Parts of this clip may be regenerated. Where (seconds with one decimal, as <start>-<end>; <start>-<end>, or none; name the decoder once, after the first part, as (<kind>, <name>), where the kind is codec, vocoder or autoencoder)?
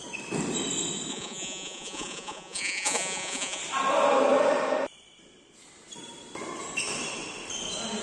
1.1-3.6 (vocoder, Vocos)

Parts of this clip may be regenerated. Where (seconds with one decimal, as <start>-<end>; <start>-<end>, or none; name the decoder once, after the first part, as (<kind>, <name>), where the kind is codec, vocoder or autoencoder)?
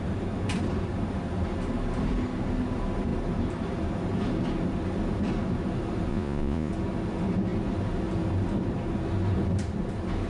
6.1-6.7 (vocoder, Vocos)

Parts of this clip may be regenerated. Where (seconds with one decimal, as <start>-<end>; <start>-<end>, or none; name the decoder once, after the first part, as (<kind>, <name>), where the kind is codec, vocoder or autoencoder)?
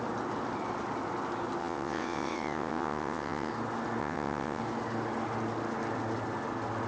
1.6-3.5 (vocoder, WaveNeXt); 4.0-4.6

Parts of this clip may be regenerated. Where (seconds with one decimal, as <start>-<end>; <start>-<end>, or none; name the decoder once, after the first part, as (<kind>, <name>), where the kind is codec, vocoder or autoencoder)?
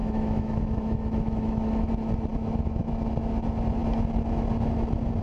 0.0-1.9 (autoencoder, DAC-VAE); 2.3-2.9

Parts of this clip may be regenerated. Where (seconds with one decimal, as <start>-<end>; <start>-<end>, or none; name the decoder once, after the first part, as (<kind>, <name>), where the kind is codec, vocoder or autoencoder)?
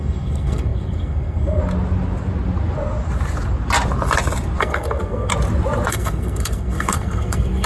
0.0-1.6 (codec, SNAC); 4.6-5.3; 5.9-7.7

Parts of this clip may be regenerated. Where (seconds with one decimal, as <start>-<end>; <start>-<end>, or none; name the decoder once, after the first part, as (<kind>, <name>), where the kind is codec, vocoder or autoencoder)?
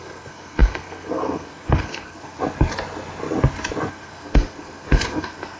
0.0-2.4 (codec, SNAC); 3.9-5.6